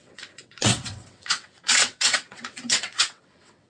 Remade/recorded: remade